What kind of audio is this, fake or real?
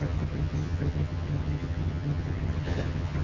fake